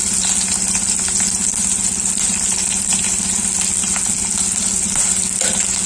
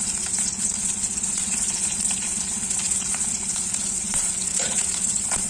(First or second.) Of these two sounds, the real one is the first